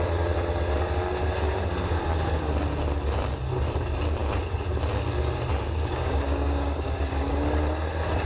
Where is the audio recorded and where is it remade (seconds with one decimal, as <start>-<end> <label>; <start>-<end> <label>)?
0.0-5.5 recorded; 5.5-7.3 remade; 7.3-8.3 recorded